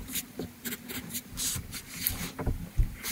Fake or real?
real